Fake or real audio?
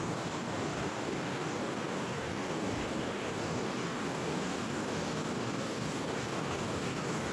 fake